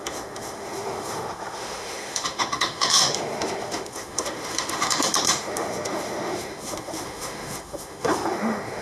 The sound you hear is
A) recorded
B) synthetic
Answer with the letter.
B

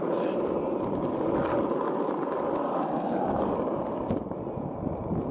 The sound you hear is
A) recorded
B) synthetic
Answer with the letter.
A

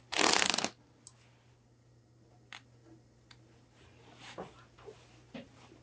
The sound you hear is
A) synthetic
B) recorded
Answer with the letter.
B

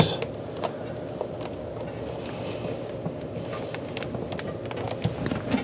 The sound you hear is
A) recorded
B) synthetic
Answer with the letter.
A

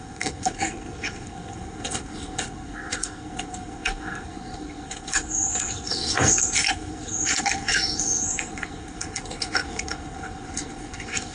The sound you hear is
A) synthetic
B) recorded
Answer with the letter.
A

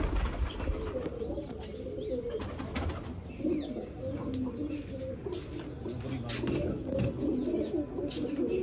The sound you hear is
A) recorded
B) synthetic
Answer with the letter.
A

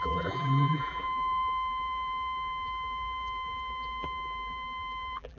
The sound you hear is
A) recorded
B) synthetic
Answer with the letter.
B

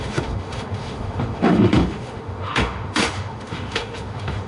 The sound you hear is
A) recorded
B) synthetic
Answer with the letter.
B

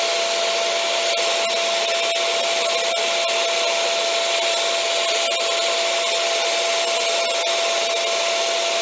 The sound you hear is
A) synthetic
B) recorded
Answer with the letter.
B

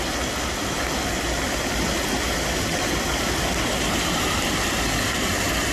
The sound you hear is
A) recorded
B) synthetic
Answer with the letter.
A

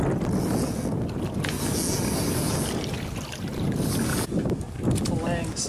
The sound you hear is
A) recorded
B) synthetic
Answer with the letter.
A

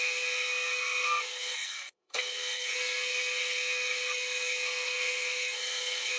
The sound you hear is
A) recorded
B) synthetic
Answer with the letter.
B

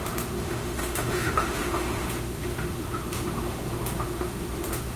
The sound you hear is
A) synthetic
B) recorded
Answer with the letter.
A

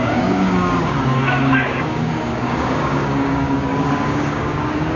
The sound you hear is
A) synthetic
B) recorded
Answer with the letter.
A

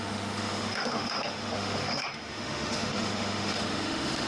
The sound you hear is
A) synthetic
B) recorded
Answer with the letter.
A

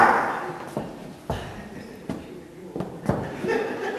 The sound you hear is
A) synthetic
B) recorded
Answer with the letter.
B